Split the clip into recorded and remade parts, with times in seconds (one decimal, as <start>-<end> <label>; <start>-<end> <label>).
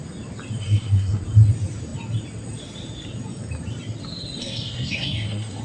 0.0-0.6 recorded; 0.6-1.2 remade; 1.2-4.4 recorded; 4.4-5.6 remade